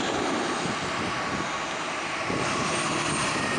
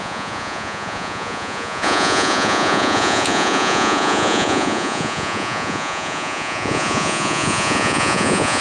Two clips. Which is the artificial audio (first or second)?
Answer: second